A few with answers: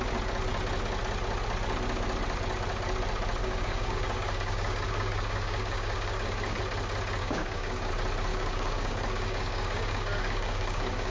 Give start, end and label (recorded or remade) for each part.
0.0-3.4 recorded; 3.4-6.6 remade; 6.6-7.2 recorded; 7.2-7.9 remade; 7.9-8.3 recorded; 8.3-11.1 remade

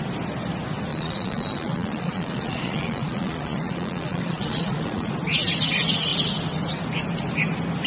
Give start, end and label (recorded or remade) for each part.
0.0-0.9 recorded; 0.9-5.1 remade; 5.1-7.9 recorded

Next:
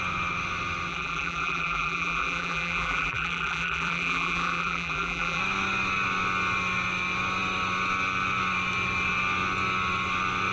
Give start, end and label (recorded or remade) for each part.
0.0-0.9 recorded; 0.9-5.4 remade; 5.4-10.5 recorded